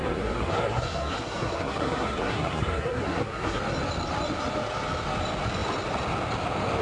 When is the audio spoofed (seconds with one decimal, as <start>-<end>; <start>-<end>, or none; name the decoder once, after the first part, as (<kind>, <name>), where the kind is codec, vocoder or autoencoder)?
0.0-3.6 (codec, SNAC)